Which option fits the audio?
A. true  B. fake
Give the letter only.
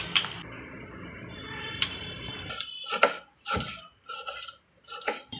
B